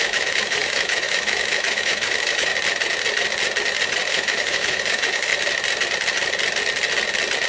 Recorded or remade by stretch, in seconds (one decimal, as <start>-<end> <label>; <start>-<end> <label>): 0.0-2.5 remade; 2.5-4.1 recorded; 4.1-5.3 remade; 5.3-7.5 recorded